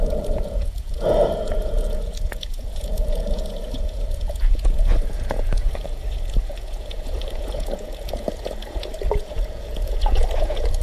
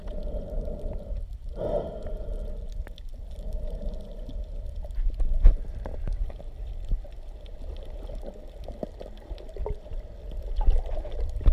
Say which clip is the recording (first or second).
second